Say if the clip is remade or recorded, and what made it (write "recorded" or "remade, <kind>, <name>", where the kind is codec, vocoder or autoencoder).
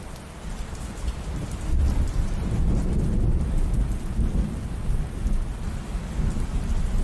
recorded